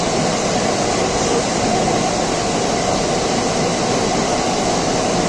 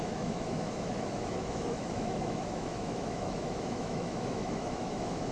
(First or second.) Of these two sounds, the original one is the first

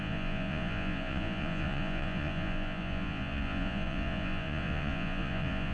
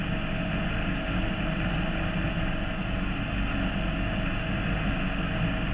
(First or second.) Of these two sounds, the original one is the second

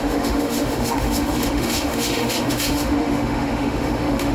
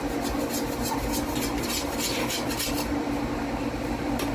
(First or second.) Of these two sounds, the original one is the second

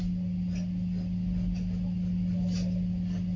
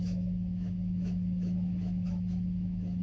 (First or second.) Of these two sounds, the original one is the first